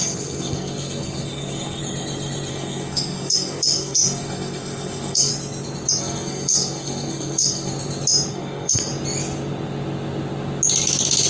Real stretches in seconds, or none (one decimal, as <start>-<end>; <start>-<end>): 1.8-2.5; 5.3-6.0; 7.7-8.3; 8.9-11.3